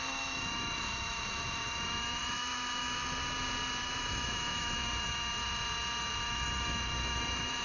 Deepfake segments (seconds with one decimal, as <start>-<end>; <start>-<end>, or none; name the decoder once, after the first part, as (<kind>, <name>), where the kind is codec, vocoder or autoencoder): 0.0-3.2 (autoencoder, DAC-VAE); 3.8-5.4; 6.0-7.6